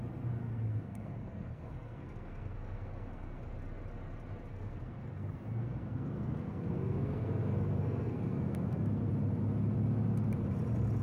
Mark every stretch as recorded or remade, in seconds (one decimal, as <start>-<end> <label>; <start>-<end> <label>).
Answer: 0.0-0.4 recorded; 0.4-3.5 remade; 3.5-4.5 recorded; 4.5-9.1 remade; 9.1-11.0 recorded